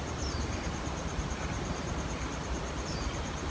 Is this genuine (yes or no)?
no